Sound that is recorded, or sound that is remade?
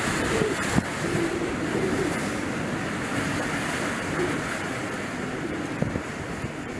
recorded